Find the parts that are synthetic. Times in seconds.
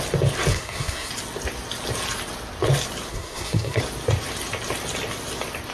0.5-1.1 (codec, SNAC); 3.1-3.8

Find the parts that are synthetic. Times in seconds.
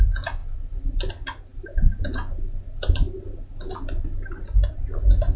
none